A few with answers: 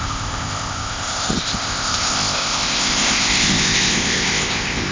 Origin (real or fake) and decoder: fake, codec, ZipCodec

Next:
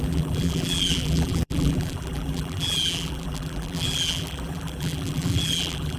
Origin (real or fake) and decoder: fake, vocoder, BigVGAN v2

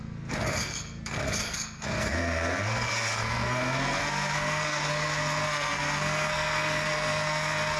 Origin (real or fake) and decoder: fake, codec, SNAC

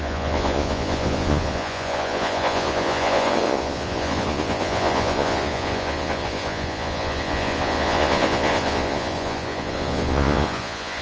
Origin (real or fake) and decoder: fake, vocoder, Vocos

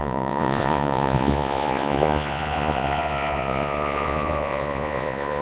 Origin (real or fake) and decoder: fake, vocoder, Vocos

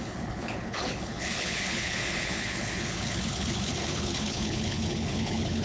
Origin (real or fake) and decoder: fake, codec, HILCodec